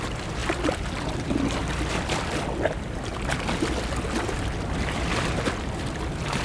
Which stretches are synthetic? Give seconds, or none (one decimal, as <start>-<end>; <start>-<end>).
0.0-3.1; 5.5-6.4